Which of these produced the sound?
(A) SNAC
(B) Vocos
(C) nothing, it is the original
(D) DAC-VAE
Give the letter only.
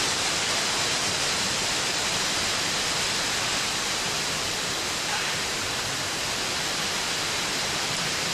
C